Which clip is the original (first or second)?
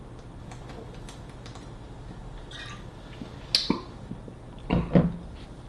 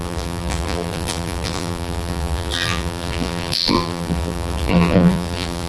first